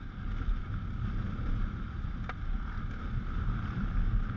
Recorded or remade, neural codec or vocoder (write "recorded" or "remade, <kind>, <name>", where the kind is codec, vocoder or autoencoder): recorded